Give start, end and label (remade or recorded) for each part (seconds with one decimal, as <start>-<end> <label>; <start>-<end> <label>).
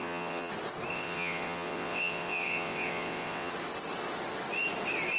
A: 0.0-0.5 remade; 0.5-0.9 recorded; 0.9-3.5 remade; 3.5-5.2 recorded